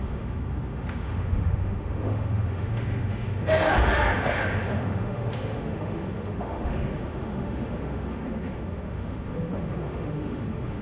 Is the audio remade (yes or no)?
yes